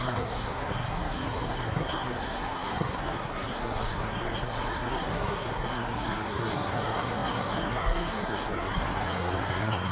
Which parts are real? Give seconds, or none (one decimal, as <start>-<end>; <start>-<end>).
none